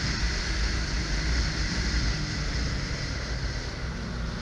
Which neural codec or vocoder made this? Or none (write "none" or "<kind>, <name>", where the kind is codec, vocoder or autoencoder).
none